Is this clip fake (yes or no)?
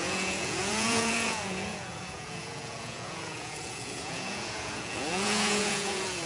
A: yes